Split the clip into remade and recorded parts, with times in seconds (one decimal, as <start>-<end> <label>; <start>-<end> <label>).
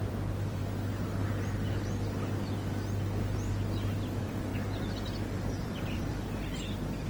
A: 0.0-0.6 remade; 0.6-3.5 recorded; 3.5-4.5 remade; 4.5-5.6 recorded; 5.6-6.1 remade; 6.1-7.1 recorded